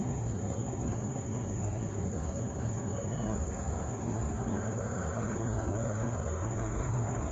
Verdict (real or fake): fake